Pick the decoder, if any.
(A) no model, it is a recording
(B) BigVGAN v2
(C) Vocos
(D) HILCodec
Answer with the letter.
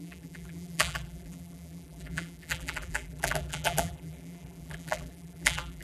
B